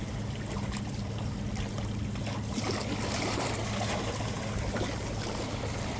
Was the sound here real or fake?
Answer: real